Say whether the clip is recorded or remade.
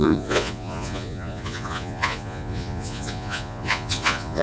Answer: remade